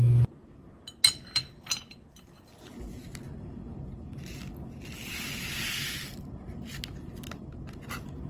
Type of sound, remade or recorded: recorded